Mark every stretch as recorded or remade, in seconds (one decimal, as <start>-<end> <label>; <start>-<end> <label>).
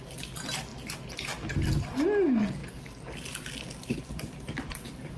0.0-5.2 recorded